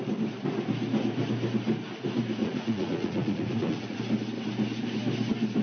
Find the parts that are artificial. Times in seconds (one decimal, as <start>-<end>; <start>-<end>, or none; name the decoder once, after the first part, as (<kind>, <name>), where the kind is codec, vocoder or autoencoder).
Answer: 2.4-4.0 (vocoder, Vocos)